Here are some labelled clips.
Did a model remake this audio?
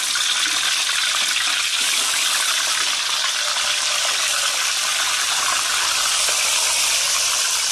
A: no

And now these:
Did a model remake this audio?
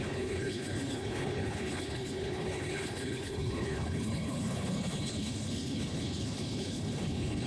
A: yes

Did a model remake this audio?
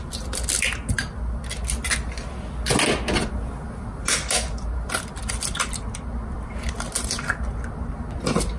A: no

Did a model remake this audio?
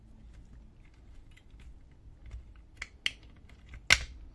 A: no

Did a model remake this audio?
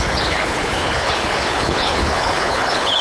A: yes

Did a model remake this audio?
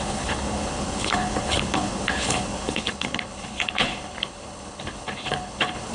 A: yes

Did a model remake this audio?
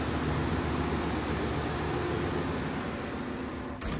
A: no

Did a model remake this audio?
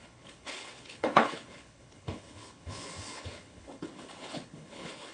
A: yes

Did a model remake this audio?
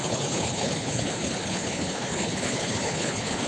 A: yes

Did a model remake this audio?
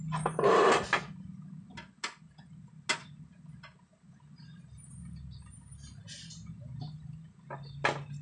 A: no